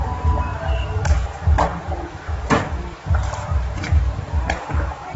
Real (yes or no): yes